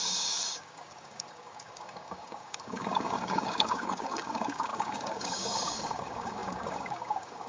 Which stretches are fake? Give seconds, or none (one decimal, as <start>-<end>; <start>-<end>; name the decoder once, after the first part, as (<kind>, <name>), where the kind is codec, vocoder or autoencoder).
0.0-7.5 (codec, DAC)